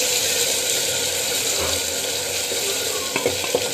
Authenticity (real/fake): real